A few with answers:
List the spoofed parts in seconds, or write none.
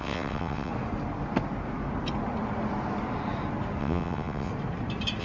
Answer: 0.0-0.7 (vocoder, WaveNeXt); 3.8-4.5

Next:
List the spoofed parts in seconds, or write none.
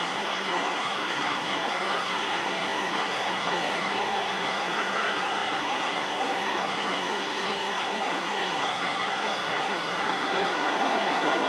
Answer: 0.0-11.5 (codec, SNAC)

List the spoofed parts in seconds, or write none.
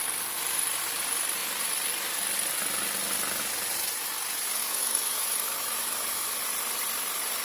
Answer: 4.6-6.4 (autoencoder, DAC-VAE)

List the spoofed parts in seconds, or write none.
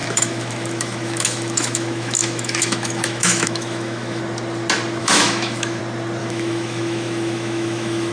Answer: 0.0-4.2 (autoencoder, DAC-VAE); 5.0-5.8; 6.2-8.1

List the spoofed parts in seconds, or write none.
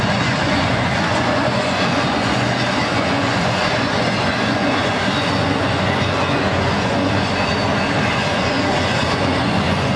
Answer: 0.0-7.5 (vocoder, Vocos); 8.0-10.0